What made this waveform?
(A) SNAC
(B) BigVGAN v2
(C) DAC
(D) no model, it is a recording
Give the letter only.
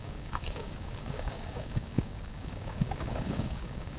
C